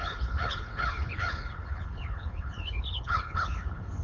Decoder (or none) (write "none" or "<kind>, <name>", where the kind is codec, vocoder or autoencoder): codec, HILCodec